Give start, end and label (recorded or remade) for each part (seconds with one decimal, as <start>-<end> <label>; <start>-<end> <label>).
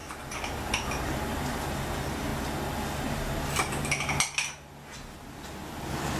0.0-1.7 recorded; 1.7-2.3 remade; 2.3-6.2 recorded